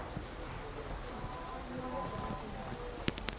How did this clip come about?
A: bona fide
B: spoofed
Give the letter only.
A